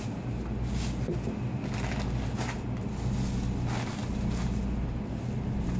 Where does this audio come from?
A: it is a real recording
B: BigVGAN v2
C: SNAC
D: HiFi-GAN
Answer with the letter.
A